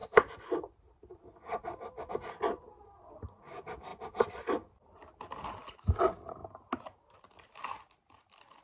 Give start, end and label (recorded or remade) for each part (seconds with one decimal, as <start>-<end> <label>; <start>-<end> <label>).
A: 0.0-8.6 recorded